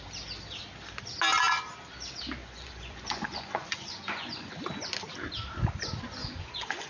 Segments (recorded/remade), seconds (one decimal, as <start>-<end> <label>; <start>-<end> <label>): 0.0-2.4 recorded; 2.4-4.5 remade; 4.5-6.2 recorded; 6.2-6.9 remade